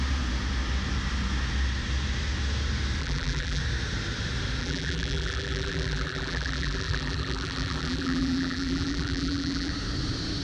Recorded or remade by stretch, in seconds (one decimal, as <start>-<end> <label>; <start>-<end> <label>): 0.0-3.0 recorded; 3.0-3.6 remade; 3.6-4.6 recorded; 4.6-9.7 remade; 9.7-10.4 recorded